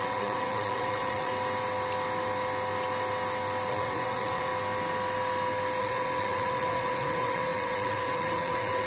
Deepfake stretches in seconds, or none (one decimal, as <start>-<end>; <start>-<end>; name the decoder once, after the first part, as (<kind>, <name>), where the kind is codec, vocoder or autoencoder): 0.0-1.3 (vocoder, WaveNeXt); 3.7-4.5; 5.8-8.9